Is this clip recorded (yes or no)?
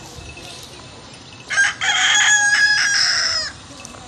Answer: yes